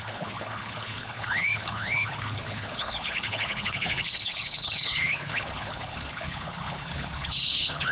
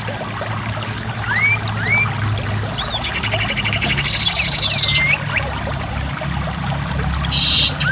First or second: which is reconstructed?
first